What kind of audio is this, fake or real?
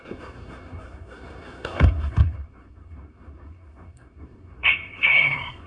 fake